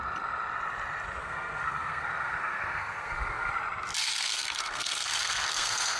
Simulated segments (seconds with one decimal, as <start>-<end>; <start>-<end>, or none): 1.2-3.5; 4.0-6.0

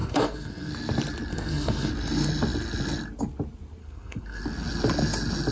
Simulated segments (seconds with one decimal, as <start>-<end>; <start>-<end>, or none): 0.0-0.7; 1.3-1.9; 3.8-4.4

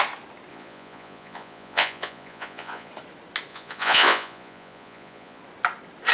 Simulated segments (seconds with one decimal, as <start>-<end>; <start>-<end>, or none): 0.5-2.9; 3.5-5.4